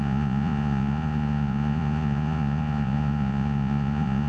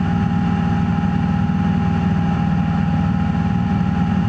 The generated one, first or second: first